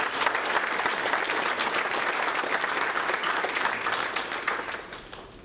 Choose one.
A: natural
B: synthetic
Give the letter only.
A